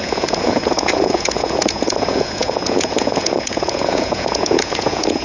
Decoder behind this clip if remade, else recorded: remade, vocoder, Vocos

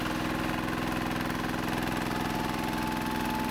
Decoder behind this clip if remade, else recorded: recorded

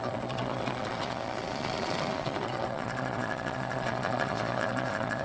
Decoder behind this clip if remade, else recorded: remade, vocoder, Vocos